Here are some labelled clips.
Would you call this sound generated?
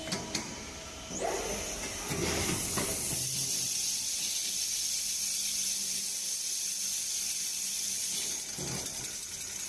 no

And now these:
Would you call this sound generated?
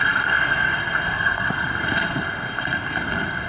yes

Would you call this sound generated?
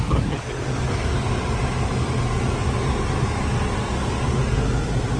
no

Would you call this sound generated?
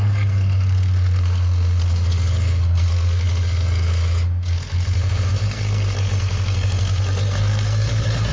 yes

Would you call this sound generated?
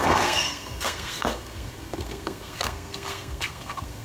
yes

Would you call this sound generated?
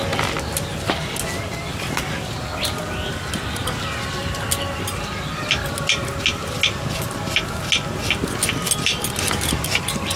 no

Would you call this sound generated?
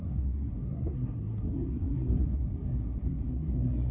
yes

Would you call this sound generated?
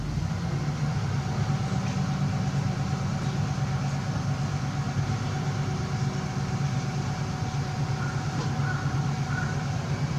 no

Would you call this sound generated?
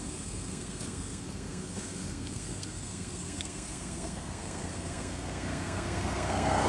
yes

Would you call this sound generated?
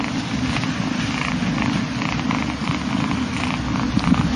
no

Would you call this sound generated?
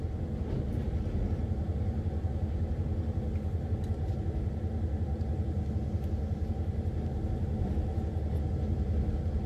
no